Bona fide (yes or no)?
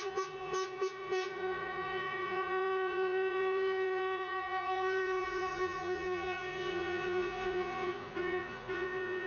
no